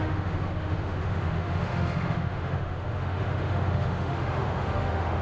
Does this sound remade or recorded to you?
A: remade